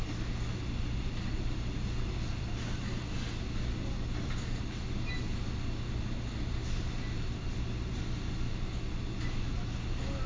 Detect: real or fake real